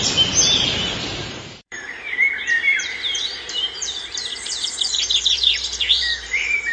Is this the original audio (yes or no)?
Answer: no